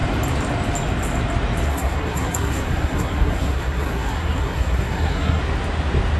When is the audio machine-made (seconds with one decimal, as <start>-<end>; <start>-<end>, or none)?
1.7-5.4